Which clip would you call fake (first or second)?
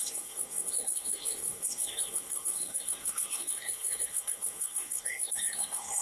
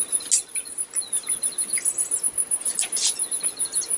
first